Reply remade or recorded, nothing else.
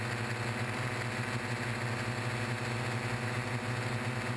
recorded